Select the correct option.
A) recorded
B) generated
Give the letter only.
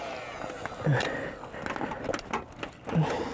A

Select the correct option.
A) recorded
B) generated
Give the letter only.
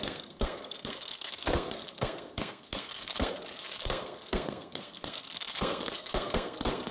B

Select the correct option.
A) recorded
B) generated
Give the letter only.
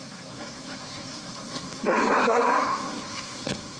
B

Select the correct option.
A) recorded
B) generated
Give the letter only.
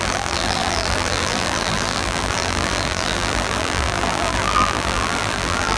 B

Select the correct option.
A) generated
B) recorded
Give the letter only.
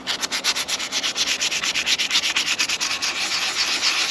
B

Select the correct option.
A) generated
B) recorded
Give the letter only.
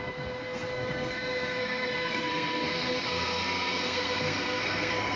A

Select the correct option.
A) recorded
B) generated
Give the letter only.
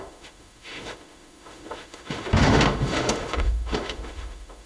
B